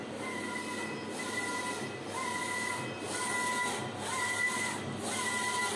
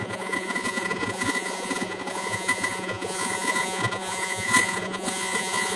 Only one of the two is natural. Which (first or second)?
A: first